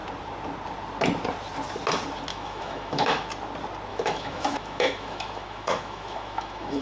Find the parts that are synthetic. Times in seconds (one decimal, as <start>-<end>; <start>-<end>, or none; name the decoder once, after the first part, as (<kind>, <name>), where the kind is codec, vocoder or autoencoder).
2.3-3.3 (autoencoder, DAC-VAE); 3.9-6.8